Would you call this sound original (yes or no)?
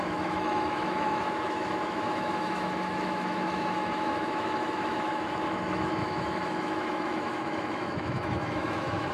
no